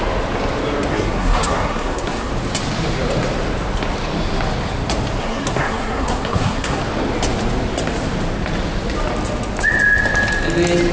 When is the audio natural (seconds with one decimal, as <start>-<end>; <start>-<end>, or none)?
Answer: 0.0-0.9; 2.3-5.2; 6.8-10.9